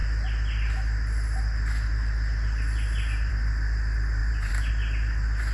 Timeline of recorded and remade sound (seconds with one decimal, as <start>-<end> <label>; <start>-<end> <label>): 0.0-4.2 recorded; 4.2-4.7 remade; 4.7-5.5 recorded